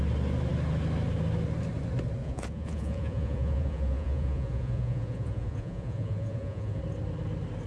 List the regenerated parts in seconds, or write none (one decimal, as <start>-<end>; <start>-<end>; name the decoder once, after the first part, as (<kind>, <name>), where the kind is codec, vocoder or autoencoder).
2.2-6.8 (vocoder, Vocos)